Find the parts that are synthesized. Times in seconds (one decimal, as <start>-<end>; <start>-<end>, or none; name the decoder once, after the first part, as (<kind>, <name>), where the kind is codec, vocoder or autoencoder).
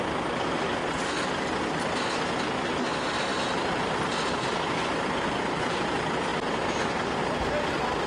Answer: none